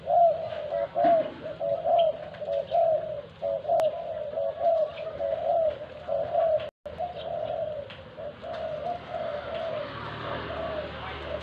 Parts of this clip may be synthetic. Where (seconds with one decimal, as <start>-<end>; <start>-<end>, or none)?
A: none